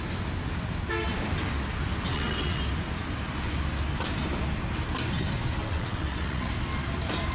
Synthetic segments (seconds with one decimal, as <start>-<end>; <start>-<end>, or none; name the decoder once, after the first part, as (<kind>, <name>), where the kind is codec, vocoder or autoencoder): 2.1-2.6 (vocoder, WaveNeXt); 5.6-6.5